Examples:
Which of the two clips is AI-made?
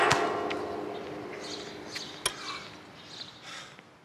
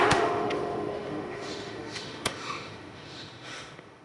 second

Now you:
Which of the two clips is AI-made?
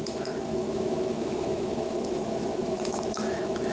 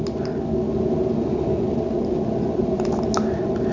first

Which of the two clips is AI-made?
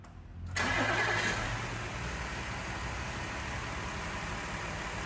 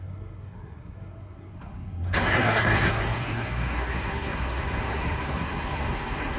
second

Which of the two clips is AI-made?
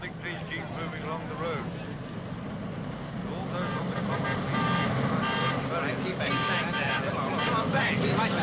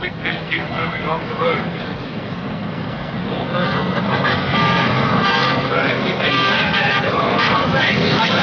second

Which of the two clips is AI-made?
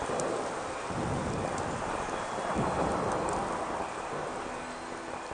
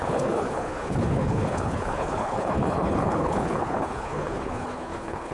second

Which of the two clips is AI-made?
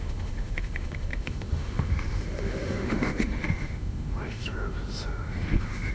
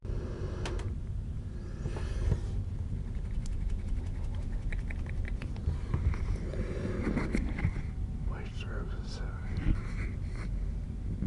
first